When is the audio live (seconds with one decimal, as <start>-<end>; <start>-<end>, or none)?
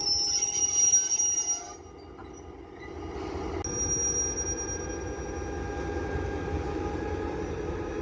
0.0-8.0